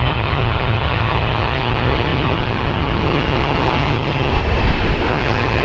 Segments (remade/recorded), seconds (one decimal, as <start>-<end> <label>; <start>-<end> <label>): 0.0-4.3 remade; 4.3-5.1 recorded; 5.1-5.6 remade